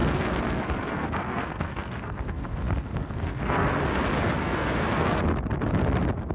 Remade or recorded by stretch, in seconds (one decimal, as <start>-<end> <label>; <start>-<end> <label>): 0.0-3.7 remade; 3.7-4.4 recorded; 4.4-5.2 remade; 5.2-6.3 recorded